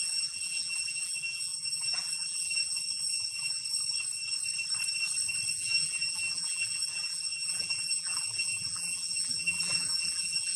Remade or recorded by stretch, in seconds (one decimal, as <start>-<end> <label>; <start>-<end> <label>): 0.0-3.6 remade; 3.6-5.5 recorded; 5.5-10.6 remade